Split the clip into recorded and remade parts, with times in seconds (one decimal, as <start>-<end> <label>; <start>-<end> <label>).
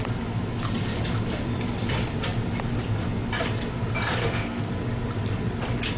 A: 0.0-4.2 recorded; 4.2-4.7 remade; 4.7-6.0 recorded